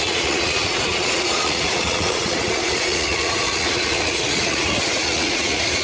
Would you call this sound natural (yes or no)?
no